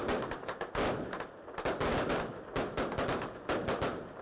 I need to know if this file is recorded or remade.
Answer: recorded